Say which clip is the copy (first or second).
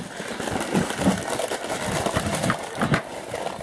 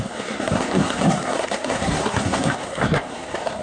second